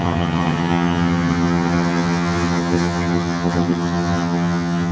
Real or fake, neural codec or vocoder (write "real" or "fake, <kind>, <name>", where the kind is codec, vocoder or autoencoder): fake, vocoder, HiFi-GAN